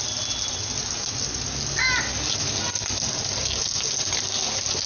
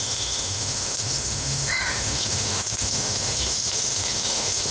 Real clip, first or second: first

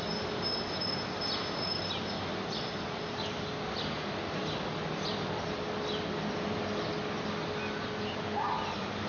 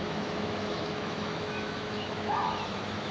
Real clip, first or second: first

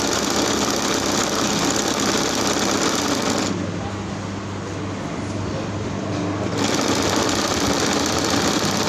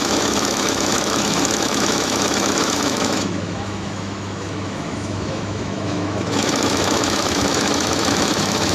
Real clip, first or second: first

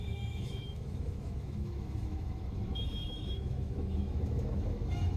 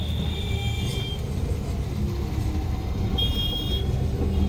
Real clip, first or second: second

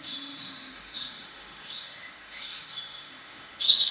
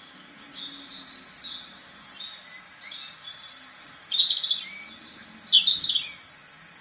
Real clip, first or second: second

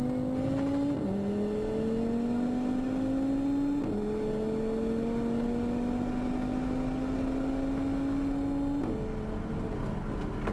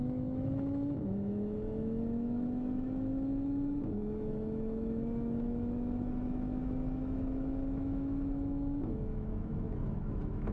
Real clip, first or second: first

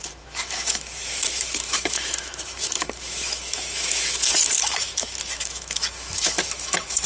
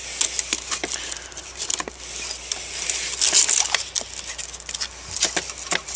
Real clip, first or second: second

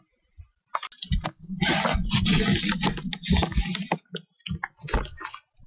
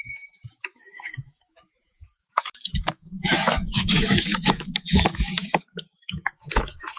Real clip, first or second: first